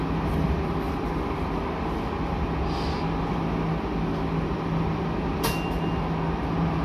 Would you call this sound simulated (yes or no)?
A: no